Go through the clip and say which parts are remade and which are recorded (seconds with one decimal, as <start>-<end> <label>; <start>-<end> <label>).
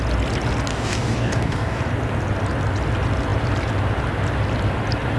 0.0-0.7 recorded; 0.7-1.8 remade; 1.8-5.2 recorded